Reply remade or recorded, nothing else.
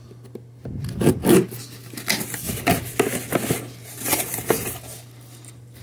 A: recorded